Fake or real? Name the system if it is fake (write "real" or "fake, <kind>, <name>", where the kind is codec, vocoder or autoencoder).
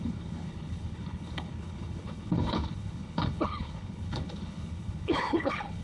fake, codec, HILCodec